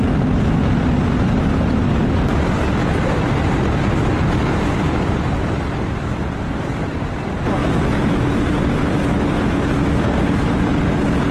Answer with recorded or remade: recorded